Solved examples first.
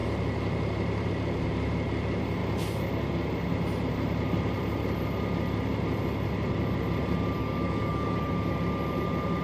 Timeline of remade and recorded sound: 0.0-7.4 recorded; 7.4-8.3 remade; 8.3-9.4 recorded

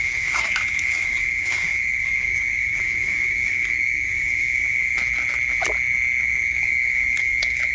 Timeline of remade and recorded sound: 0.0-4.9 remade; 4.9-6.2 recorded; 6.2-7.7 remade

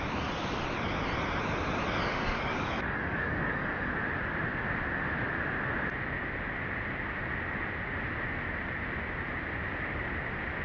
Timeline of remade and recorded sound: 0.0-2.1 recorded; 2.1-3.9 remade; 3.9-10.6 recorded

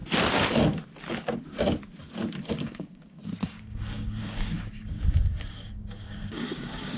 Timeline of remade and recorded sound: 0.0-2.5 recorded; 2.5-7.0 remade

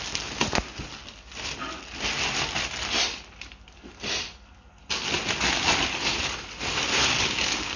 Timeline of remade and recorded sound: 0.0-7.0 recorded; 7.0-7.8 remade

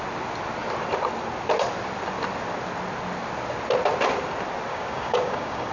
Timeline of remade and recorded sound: 0.0-4.7 recorded; 4.7-5.7 remade